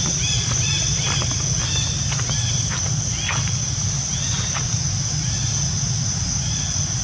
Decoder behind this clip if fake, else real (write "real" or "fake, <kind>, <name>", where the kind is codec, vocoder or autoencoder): real